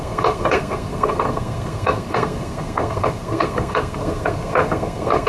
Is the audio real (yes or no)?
no